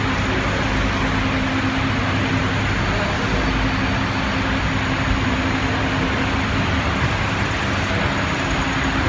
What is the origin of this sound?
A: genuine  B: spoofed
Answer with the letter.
A